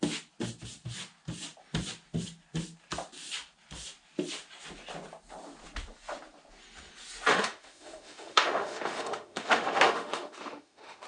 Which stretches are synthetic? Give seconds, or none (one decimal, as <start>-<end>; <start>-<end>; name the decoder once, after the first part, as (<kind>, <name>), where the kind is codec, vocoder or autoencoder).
7.3-11.1 (autoencoder, DAC-VAE)

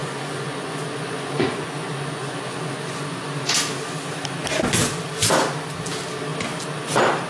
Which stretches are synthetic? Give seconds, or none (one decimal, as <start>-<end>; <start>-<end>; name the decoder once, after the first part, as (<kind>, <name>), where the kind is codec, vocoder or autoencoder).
0.0-3.5 (vocoder, Vocos)

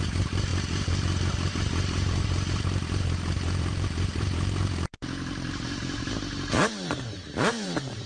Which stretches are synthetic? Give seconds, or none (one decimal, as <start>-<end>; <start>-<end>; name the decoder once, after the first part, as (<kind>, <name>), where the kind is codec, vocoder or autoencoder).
0.0-0.5 (vocoder, BigVGAN v2); 1.5-8.1

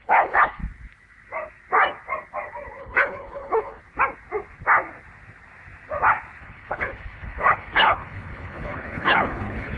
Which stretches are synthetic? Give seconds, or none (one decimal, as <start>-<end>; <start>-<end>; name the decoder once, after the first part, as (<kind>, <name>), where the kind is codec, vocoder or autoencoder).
0.0-0.6 (codec, HILCodec); 2.8-3.8; 6.4-9.8